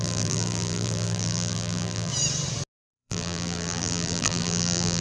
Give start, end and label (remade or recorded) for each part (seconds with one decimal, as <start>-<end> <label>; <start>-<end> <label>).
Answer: 0.0-2.1 remade; 2.1-2.9 recorded; 2.9-5.0 remade